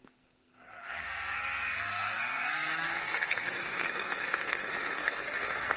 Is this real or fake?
fake